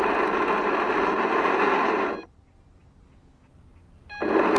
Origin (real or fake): real